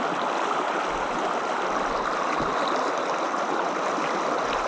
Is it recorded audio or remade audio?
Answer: recorded